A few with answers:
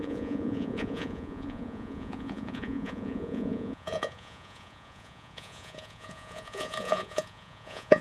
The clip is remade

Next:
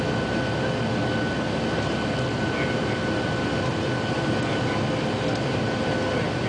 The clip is recorded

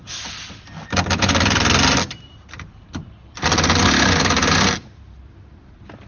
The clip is recorded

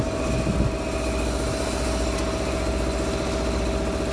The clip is recorded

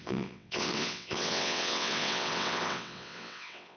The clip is remade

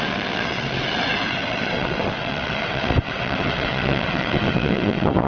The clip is remade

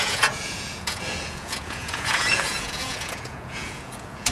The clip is remade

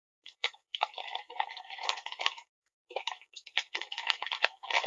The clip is remade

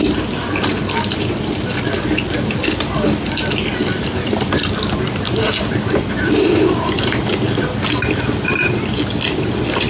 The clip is recorded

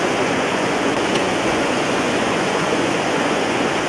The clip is remade